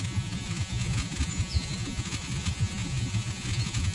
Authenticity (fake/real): fake